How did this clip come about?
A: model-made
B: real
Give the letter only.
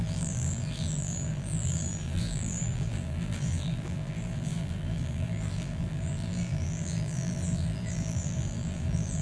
A